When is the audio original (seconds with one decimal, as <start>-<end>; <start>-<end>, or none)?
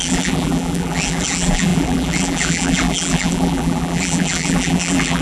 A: none